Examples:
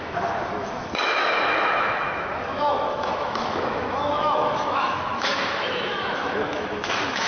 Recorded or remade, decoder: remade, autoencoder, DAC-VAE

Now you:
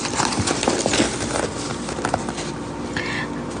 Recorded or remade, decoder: recorded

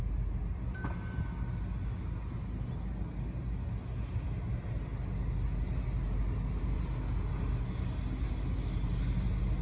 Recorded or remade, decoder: recorded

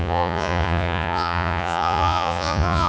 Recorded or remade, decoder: remade, vocoder, Vocos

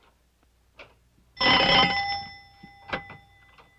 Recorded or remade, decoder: recorded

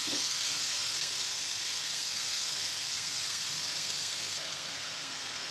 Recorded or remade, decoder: remade, codec, SNAC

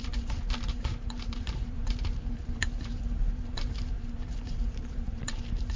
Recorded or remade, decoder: remade, vocoder, BigVGAN v2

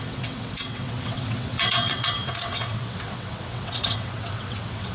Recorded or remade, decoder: remade, vocoder, WaveNeXt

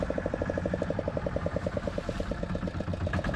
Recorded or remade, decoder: recorded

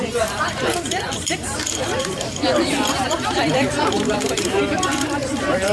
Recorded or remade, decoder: remade, vocoder, BigVGAN v2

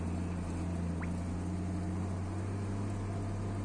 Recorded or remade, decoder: recorded